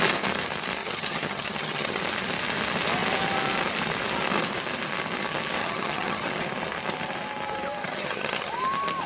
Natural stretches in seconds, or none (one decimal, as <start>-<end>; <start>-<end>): 0.0-0.8; 2.0-5.6; 6.3-7.8; 8.5-9.1